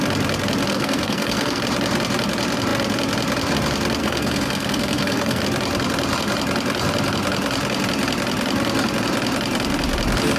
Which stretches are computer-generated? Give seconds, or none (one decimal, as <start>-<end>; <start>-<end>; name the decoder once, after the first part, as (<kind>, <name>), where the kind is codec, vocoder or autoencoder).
0.7-1.6 (codec, SNAC); 4.0-5.4